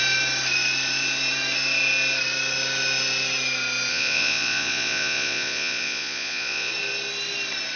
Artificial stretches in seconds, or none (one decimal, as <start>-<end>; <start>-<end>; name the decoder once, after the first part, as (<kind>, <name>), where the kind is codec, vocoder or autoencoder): 3.9-6.7 (vocoder, Vocos)